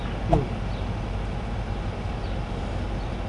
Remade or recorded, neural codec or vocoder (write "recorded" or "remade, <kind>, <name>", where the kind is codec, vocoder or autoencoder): recorded